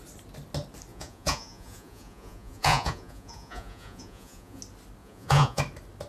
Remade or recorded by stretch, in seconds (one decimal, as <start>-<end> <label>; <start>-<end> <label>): 0.0-0.9 recorded; 0.9-4.6 remade; 4.6-5.0 recorded; 5.0-5.6 remade; 5.6-6.1 recorded